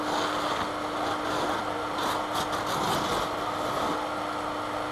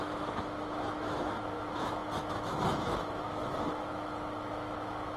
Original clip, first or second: first